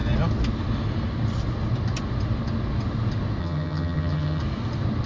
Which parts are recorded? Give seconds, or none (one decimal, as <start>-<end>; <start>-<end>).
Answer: 0.0-3.4; 4.4-5.1